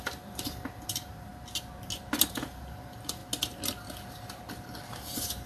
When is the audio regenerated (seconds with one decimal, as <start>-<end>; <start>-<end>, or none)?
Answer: 0.0-1.3; 2.3-3.2; 5.0-5.5